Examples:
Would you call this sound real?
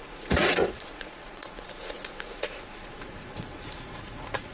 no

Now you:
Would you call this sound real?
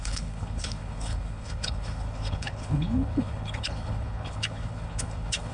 no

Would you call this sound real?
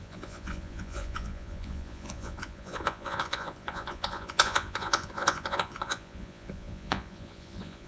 no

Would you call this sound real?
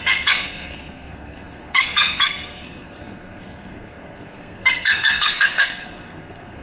no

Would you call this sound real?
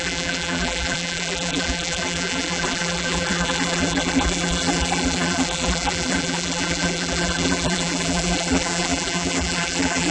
no